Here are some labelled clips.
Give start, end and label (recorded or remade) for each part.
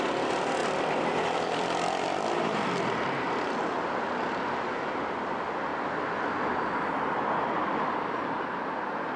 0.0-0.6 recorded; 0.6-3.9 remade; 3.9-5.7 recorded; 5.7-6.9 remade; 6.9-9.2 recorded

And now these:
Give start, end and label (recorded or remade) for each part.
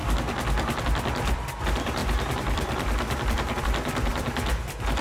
0.0-0.8 recorded; 0.8-5.0 remade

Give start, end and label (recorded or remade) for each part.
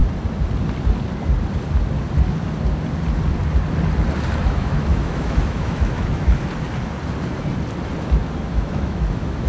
0.0-4.5 recorded; 4.5-6.4 remade; 6.4-8.5 recorded; 8.5-9.5 remade